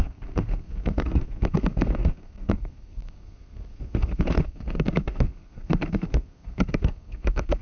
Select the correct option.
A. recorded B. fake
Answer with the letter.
B